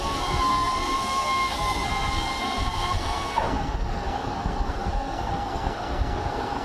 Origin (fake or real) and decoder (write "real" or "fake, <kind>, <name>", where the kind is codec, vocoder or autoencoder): fake, codec, SNAC